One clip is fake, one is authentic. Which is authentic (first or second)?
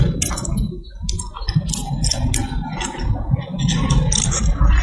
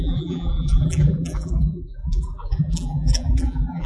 first